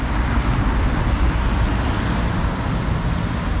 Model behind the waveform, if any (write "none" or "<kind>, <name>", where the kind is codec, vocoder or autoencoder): none